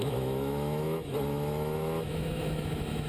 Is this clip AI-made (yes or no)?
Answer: yes